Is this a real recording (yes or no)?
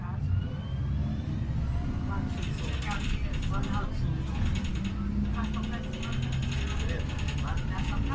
yes